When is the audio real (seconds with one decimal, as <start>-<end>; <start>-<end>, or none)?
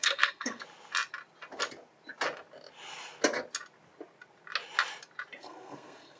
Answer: 0.6-5.4